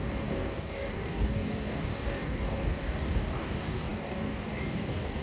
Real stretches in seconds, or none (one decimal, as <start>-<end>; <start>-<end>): none